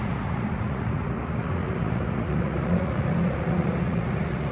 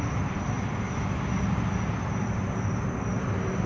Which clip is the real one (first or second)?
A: second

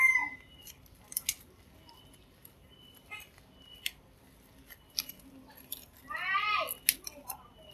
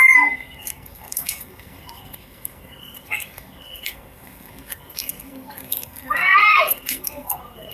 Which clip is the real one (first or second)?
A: first